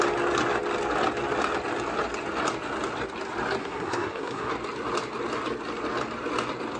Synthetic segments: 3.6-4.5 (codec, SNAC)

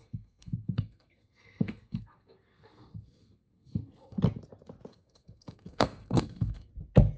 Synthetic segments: 0.0-4.2 (codec, SNAC); 4.9-6.7

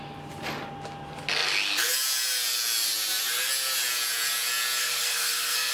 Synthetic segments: 4.8-5.7 (codec, SNAC)

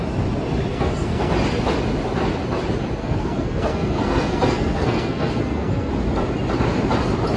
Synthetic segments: 0.7-1.3 (codec, SNAC); 3.0-5.9

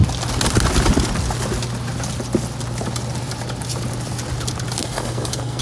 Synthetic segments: 4.8-5.6 (codec, SNAC)

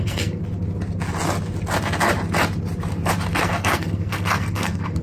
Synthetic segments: 0.0-0.4 (codec, SNAC); 3.4-5.0

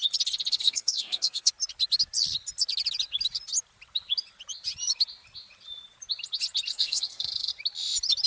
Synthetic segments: 0.5-1.5 (codec, SNAC); 6.7-7.5